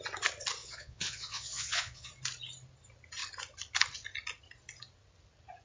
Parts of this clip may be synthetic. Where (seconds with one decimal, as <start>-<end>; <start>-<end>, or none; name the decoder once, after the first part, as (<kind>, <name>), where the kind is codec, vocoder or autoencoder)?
0.6-2.1 (vocoder, Vocos)